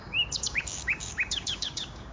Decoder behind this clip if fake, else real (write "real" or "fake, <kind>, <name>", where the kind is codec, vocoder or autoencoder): fake, codec, DAC